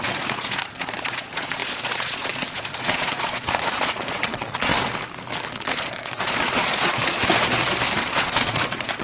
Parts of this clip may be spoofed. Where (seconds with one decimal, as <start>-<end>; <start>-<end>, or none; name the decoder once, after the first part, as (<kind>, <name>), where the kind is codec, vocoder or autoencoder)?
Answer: 0.0-4.7 (vocoder, Vocos); 5.5-7.2; 8.0-9.0